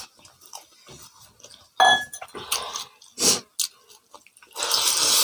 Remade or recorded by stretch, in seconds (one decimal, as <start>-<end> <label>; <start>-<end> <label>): 0.0-5.2 recorded